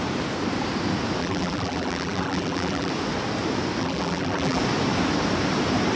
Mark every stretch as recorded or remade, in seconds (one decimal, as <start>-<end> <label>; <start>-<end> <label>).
0.0-1.2 recorded; 1.2-2.9 remade; 2.9-3.8 recorded; 3.8-4.6 remade; 4.6-6.0 recorded